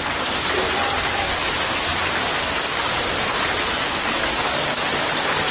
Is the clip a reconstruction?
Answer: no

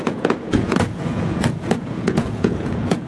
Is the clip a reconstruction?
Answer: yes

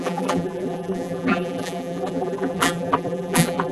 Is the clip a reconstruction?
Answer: yes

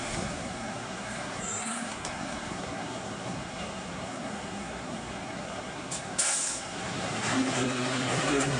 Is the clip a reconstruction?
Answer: yes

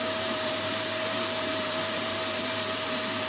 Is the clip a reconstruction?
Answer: yes